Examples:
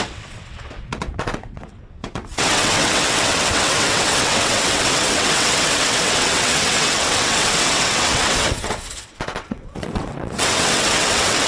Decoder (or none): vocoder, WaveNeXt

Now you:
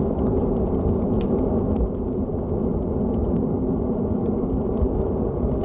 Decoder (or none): none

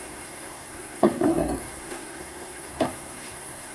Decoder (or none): codec, SNAC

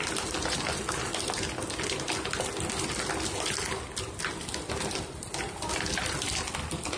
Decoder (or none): none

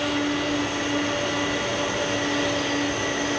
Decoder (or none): none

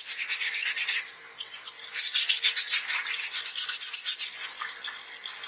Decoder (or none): none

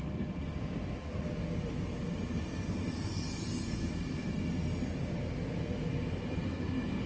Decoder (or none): none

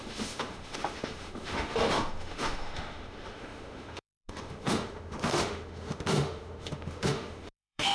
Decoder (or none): autoencoder, DAC-VAE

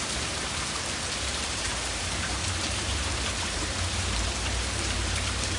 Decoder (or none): vocoder, BigVGAN v2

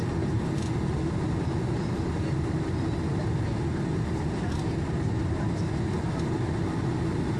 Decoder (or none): none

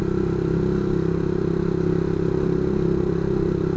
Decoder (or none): none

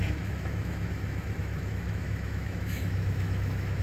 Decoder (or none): autoencoder, DAC-VAE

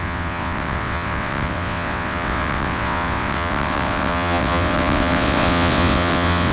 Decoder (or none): vocoder, WaveNeXt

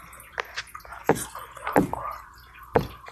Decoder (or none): none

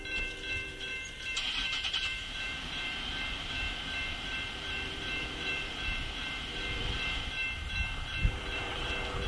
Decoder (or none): vocoder, BigVGAN v2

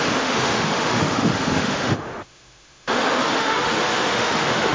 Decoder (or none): autoencoder, DAC-VAE